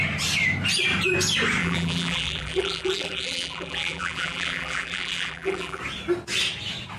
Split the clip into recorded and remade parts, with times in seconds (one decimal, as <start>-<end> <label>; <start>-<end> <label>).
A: 0.0-1.6 recorded; 1.6-5.8 remade; 5.8-7.0 recorded